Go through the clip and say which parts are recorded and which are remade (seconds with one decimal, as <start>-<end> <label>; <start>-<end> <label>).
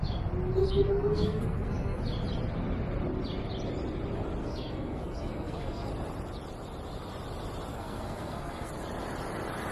0.0-0.6 recorded; 0.6-2.0 remade; 2.0-4.4 recorded; 4.4-5.9 remade; 5.9-7.7 recorded; 7.7-8.7 remade; 8.7-9.7 recorded